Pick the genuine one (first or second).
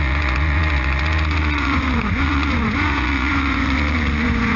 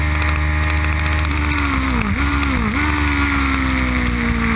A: second